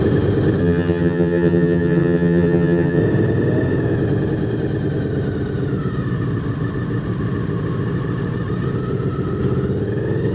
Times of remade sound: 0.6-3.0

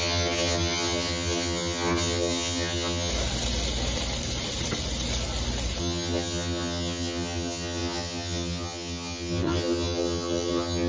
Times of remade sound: 0.0-3.1; 5.8-10.9

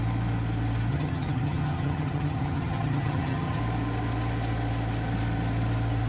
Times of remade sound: 0.9-3.6